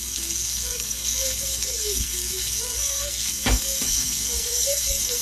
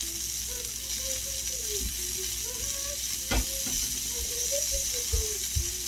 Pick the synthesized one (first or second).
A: first